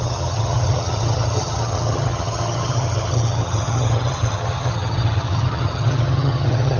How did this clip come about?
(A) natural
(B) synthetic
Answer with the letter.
B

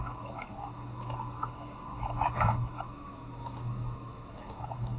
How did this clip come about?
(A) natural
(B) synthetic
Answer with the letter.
B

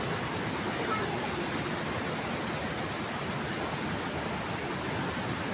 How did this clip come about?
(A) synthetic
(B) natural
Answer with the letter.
B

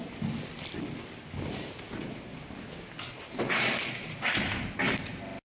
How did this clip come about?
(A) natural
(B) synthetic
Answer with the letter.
A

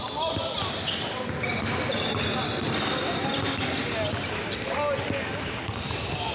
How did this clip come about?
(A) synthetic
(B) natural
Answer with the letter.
B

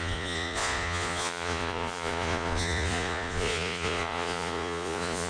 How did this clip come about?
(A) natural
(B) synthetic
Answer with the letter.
B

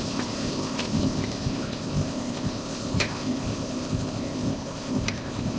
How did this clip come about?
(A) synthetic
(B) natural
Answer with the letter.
A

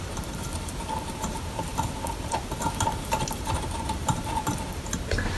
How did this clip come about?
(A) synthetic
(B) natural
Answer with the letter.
A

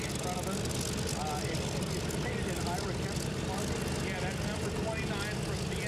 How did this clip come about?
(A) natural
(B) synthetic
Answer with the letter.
A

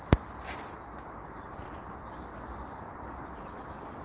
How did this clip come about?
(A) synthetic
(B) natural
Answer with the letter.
B